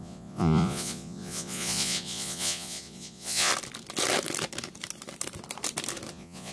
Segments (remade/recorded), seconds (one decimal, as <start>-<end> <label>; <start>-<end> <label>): 0.0-3.5 remade; 3.5-6.1 recorded; 6.1-6.5 remade